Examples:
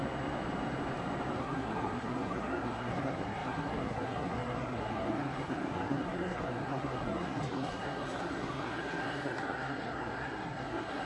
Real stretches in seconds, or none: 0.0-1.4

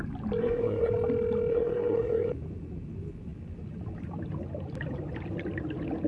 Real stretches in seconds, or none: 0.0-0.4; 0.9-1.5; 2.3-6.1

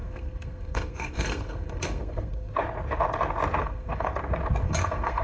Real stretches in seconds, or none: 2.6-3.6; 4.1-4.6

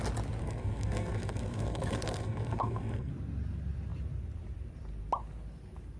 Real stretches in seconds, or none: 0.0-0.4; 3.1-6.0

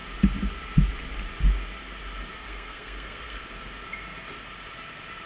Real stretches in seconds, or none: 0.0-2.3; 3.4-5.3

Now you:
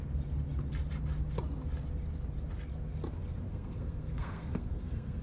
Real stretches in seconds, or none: 0.0-3.5

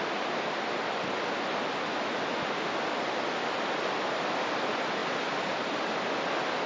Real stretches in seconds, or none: 0.0-6.7